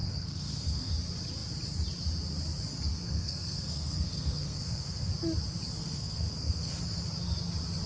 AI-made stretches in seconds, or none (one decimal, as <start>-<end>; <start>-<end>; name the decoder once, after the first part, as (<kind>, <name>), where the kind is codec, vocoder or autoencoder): 0.0-0.9 (codec, SNAC); 2.9-5.1; 5.8-6.7